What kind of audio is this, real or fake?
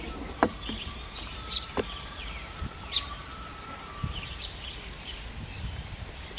fake